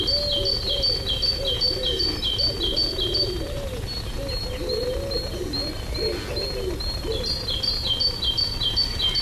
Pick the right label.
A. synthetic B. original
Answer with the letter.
B